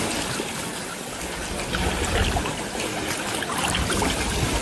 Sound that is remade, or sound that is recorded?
recorded